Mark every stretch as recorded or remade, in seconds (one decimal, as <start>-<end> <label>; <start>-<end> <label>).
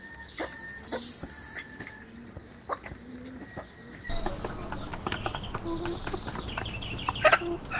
0.0-7.8 recorded